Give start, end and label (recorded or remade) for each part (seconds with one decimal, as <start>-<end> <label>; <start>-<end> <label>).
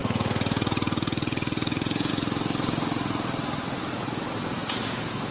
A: 0.0-2.1 remade; 2.1-4.6 recorded; 4.6-5.3 remade